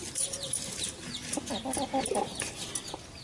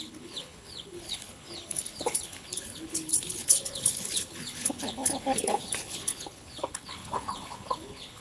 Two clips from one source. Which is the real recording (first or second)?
first